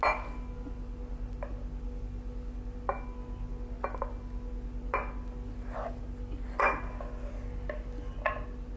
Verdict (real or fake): real